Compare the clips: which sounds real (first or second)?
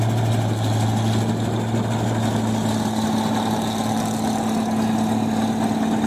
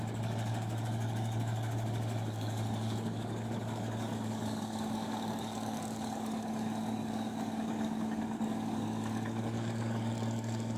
first